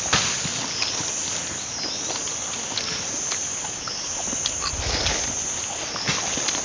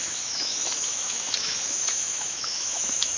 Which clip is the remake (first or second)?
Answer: second